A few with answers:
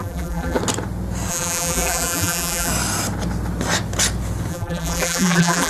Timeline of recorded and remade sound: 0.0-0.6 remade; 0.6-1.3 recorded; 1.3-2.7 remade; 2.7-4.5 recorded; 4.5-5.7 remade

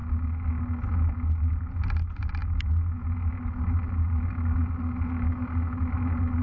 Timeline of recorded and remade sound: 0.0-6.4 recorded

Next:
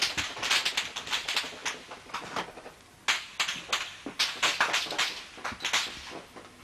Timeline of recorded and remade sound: 0.0-6.6 recorded

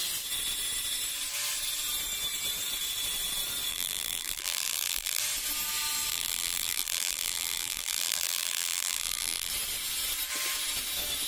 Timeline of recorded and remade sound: 0.0-3.7 recorded; 3.7-5.2 remade; 5.2-6.1 recorded; 6.1-9.5 remade; 9.5-11.3 recorded